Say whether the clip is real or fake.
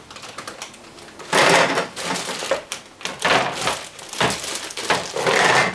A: real